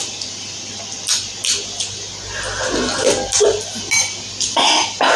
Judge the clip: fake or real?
real